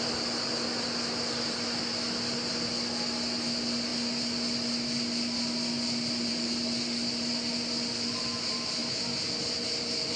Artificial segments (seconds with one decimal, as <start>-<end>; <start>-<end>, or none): none

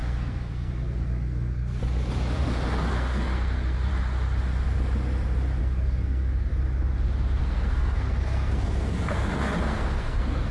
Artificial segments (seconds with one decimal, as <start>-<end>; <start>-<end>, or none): 0.0-1.8; 2.9-3.9; 5.6-6.5; 7.4-10.5

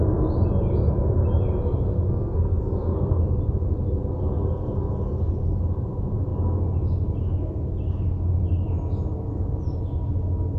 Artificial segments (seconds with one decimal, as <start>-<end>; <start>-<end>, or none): 1.9-3.2

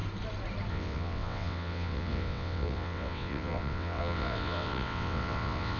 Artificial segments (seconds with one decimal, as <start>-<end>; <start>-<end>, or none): 0.7-5.8